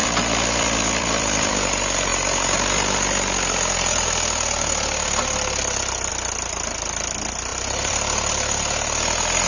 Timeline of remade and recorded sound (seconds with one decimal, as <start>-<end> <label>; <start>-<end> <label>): 0.0-1.5 remade; 1.5-7.5 recorded; 7.5-8.3 remade; 8.3-9.5 recorded